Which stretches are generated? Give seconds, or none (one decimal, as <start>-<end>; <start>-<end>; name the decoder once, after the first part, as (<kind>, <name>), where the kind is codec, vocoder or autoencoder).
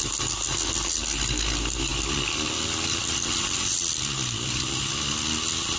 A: 1.9-4.9 (vocoder, BigVGAN v2)